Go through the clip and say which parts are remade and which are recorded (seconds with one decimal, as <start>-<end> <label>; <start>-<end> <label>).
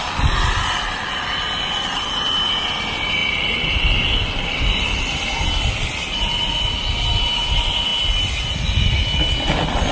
0.0-3.2 remade; 3.2-5.7 recorded; 5.7-7.9 remade; 7.9-8.9 recorded; 8.9-9.9 remade